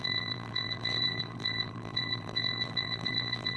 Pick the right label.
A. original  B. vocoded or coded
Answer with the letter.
B